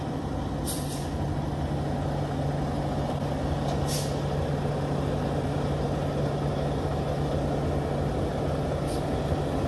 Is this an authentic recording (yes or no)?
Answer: yes